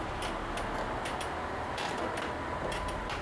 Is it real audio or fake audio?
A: real